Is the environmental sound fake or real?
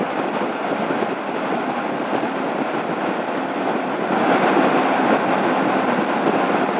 real